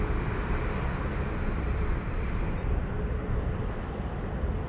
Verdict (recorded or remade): recorded